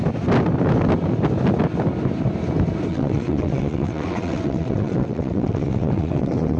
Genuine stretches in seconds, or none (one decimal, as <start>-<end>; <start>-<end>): 0.0-2.9